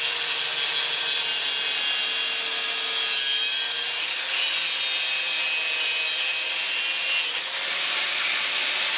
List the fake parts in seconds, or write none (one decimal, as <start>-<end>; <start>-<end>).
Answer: none